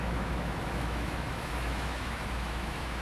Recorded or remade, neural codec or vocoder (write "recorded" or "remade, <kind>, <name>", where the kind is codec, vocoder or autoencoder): remade, autoencoder, DAC-VAE